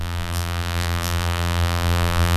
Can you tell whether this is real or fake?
fake